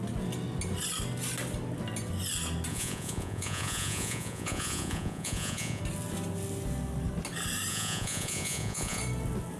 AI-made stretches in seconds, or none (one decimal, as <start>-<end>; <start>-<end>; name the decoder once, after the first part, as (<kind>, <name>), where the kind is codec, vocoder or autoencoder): 2.7-5.8 (vocoder, Vocos); 7.7-9.0